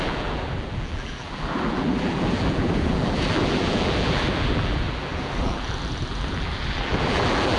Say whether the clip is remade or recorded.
remade